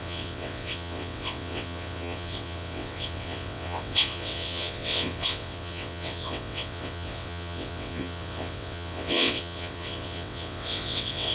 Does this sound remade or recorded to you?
remade